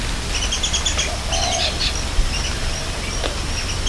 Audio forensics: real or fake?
real